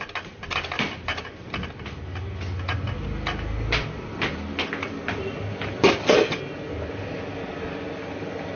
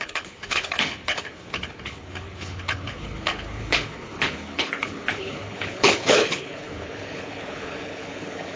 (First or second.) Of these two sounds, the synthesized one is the second